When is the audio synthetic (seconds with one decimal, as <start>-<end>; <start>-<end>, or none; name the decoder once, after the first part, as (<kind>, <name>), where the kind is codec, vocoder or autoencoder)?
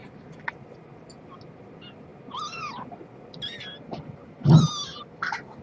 none